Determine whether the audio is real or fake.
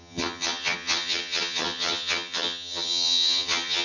fake